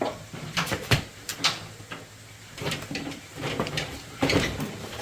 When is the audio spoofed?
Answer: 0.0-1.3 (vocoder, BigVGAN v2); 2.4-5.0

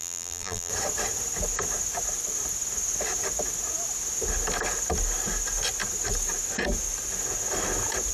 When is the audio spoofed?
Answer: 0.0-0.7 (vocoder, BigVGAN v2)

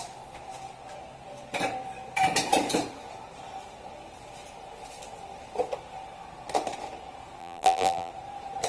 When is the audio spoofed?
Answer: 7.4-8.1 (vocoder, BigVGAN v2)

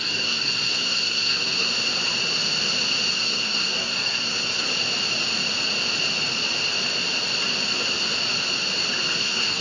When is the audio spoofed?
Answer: 0.0-1.7 (codec, SNAC); 3.1-4.7; 9.2-9.6

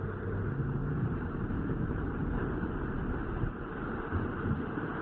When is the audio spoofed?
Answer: 0.8-3.8 (vocoder, BigVGAN v2)